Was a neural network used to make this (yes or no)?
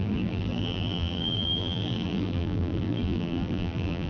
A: yes